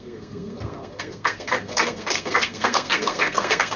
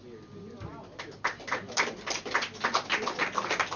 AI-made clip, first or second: first